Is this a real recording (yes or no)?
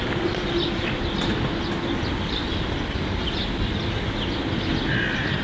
yes